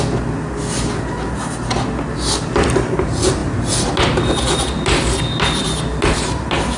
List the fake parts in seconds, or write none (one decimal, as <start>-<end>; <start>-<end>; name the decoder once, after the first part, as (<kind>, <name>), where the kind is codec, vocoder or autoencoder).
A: none